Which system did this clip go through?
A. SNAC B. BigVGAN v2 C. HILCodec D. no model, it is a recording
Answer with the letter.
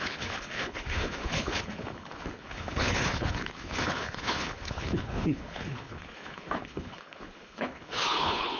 C